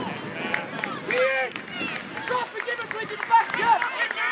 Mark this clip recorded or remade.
recorded